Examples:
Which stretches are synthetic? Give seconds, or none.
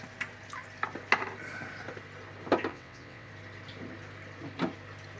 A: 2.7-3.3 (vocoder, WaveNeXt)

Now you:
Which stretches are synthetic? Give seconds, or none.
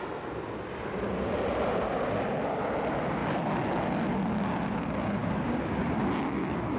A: 3.2-4.1 (vocoder, BigVGAN v2); 5.2-6.0